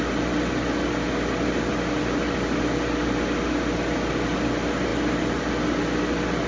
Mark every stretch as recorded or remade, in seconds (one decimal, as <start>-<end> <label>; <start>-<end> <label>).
0.0-6.5 recorded